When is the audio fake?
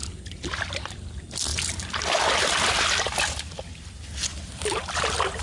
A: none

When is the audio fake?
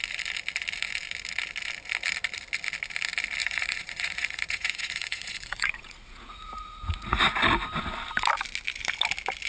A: 3.4-7.2 (vocoder, Vocos)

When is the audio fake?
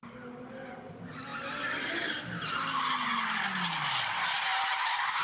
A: none